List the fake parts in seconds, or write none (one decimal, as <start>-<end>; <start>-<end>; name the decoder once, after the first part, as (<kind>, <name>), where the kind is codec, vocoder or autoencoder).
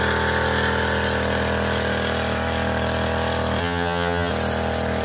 3.6-4.3 (vocoder, HiFi-GAN)